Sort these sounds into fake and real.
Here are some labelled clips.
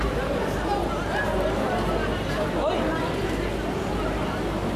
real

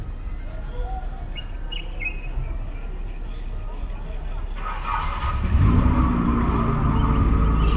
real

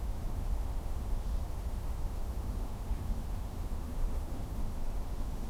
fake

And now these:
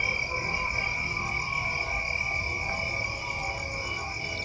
real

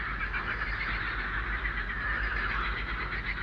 real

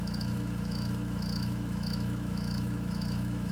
fake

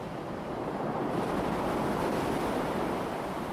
real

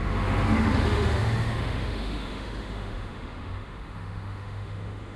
fake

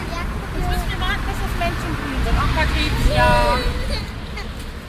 real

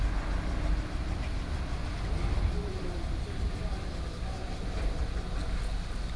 real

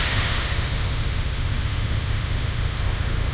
fake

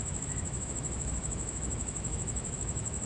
fake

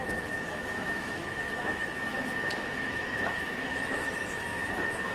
fake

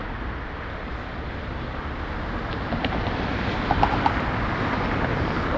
real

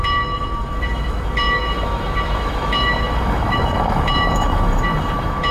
fake